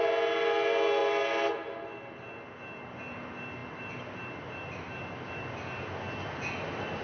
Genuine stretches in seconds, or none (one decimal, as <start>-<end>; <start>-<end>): 0.0-7.0